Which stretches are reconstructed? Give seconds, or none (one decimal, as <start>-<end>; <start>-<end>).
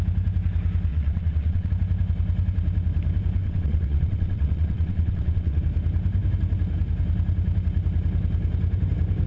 0.9-1.7; 3.4-5.6